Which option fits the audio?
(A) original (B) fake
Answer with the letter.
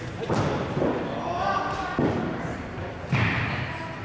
A